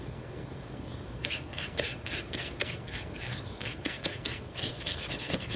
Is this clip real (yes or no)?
no